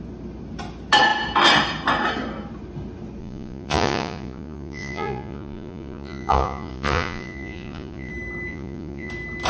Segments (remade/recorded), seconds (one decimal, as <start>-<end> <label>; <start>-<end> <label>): 0.0-3.2 recorded; 3.2-8.1 remade; 8.1-8.5 recorded; 8.5-9.1 remade; 9.1-9.5 recorded

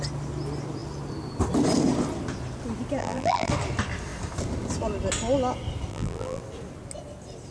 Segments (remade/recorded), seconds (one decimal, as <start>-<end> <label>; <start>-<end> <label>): 0.0-3.0 recorded; 3.0-3.5 remade; 3.5-5.9 recorded; 5.9-6.4 remade; 6.4-7.5 recorded

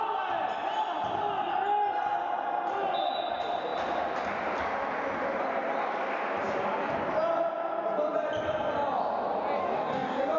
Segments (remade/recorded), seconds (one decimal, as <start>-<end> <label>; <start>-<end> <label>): 0.0-9.6 recorded; 9.6-10.4 remade

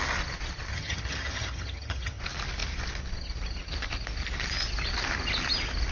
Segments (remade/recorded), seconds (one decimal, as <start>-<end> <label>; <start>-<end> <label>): 0.0-0.7 recorded; 0.7-2.2 remade; 2.2-5.9 recorded

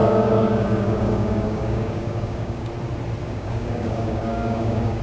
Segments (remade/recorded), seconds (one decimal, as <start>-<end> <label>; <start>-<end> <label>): 0.0-2.7 remade; 2.7-3.2 recorded; 3.2-5.0 remade